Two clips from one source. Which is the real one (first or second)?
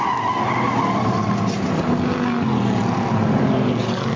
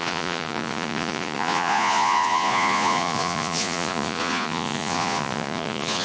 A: first